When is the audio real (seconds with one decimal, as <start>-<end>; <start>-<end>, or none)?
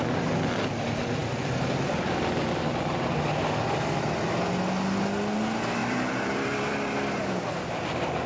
0.0-1.2; 1.9-5.8; 7.5-8.3